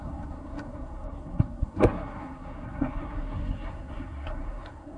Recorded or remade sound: remade